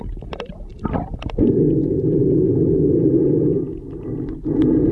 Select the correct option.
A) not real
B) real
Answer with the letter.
B